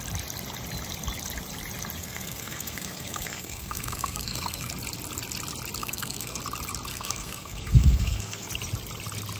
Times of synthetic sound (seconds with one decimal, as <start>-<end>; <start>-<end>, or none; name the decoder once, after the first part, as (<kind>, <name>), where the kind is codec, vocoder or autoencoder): 2.0-4.7 (codec, SNAC); 5.8-6.4; 6.9-8.5